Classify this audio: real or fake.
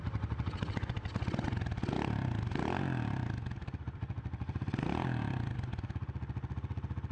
real